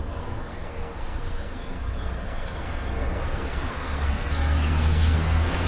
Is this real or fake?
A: fake